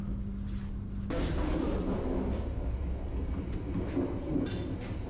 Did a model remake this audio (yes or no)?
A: no